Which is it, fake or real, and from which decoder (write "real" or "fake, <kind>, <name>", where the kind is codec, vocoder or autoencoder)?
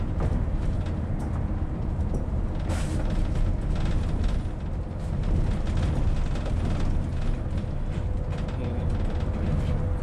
real